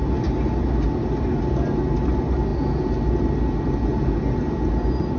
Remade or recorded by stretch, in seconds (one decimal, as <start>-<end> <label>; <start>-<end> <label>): 0.0-5.2 recorded